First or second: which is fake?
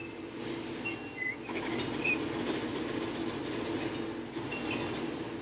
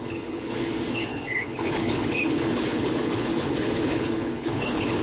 second